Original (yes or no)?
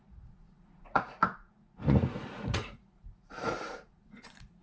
no